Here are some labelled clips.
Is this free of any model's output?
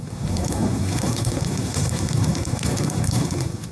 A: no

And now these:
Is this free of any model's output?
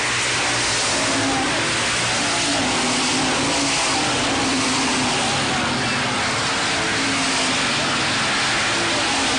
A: yes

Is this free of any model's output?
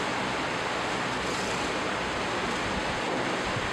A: yes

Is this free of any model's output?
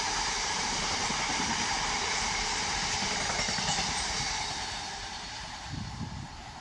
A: no